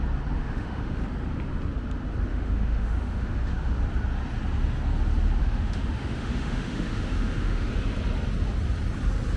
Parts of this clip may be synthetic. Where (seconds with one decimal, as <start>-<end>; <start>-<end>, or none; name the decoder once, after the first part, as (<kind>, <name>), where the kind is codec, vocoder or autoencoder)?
0.4-1.0 (autoencoder, DAC-VAE); 2.3-3.8; 5.4-7.7